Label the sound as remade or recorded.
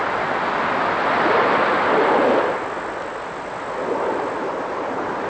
recorded